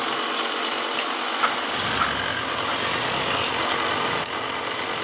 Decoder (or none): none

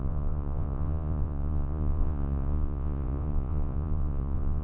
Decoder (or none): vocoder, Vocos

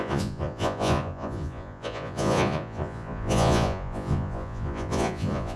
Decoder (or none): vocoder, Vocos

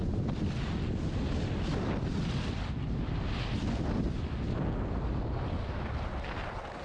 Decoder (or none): none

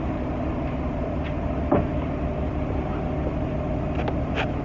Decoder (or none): none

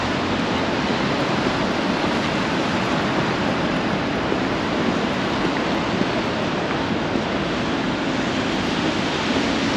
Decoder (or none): none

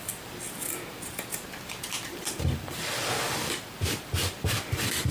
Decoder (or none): vocoder, BigVGAN v2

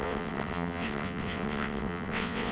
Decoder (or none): vocoder, WaveNeXt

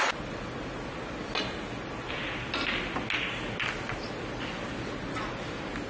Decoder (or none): none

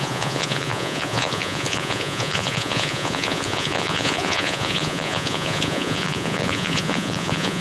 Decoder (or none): vocoder, Vocos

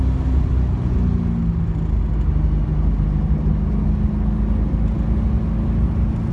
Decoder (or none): none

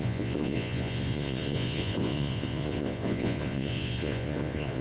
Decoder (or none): vocoder, Vocos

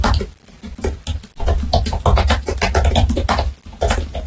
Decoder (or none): none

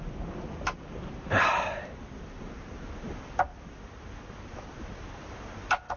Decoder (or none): none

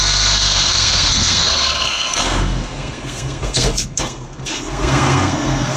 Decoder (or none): codec, SNAC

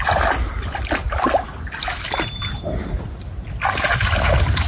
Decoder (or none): none